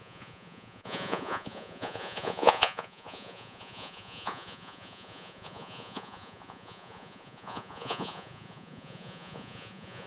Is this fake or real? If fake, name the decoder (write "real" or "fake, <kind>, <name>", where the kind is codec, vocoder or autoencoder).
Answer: fake, vocoder, Vocos